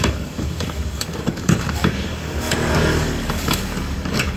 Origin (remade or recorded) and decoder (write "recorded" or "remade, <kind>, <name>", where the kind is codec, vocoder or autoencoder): remade, codec, DAC